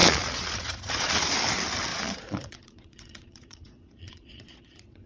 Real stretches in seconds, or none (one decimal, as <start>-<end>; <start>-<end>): 1.1-1.9